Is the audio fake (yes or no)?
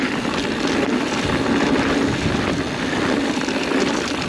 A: no